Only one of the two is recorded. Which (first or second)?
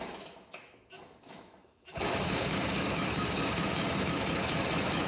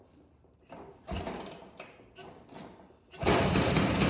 second